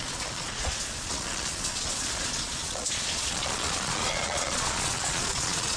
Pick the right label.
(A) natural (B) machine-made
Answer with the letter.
B